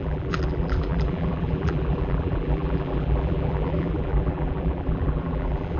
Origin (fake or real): fake